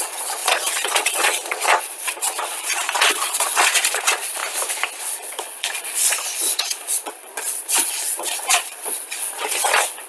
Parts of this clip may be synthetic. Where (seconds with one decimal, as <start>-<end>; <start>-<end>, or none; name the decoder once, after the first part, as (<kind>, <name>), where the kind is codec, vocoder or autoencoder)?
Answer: 0.0-4.4 (vocoder, Vocos); 5.0-10.1